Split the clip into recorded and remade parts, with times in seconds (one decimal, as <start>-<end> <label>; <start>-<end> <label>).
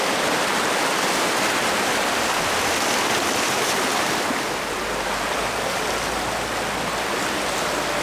0.0-8.0 recorded